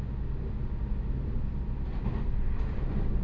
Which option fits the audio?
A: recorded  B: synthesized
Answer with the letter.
A